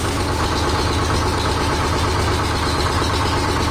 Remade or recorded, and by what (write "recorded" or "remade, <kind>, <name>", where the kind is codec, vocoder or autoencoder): recorded